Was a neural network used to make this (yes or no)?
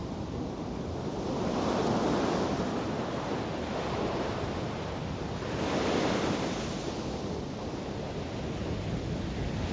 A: no